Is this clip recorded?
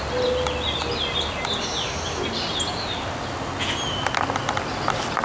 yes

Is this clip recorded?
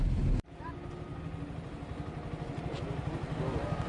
yes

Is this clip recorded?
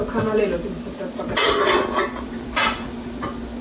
yes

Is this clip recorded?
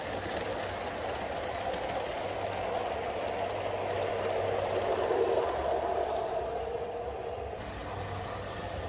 yes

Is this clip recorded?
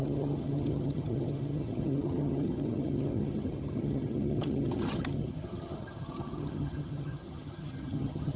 no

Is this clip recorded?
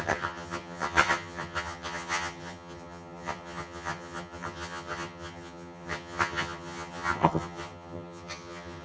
no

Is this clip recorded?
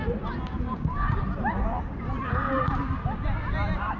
no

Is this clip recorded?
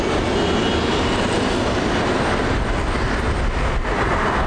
yes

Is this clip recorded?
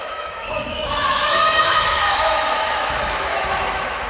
no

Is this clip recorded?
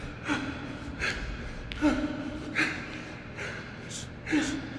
yes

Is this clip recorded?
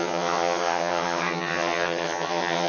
no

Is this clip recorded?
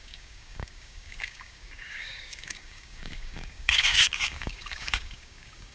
no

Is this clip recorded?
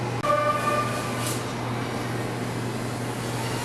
yes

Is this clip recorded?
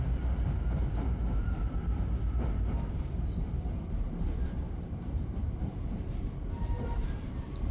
no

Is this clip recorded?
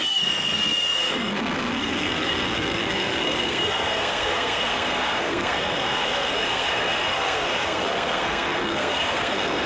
no